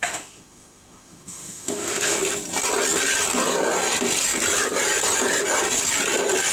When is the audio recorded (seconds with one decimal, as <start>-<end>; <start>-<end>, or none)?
2.2-6.5